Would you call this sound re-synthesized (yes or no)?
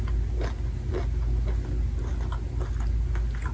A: no